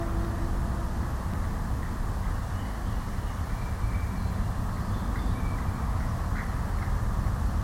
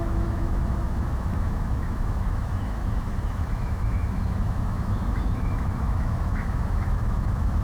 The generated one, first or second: second